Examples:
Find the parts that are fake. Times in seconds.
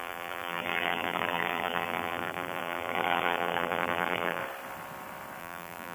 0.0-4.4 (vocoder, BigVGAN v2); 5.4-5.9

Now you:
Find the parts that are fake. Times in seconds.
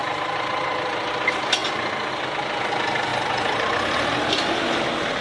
0.0-1.1 (vocoder, BigVGAN v2); 3.1-4.0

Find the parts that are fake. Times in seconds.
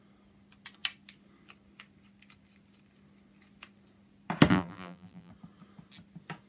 4.5-5.3 (vocoder, BigVGAN v2)